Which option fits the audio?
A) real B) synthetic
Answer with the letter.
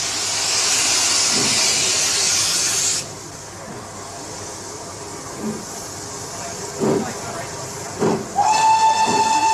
A